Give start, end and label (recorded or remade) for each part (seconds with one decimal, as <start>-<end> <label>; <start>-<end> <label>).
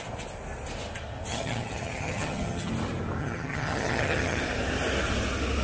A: 0.0-1.3 recorded; 1.3-2.7 remade; 2.7-3.2 recorded; 3.2-4.4 remade; 4.4-5.6 recorded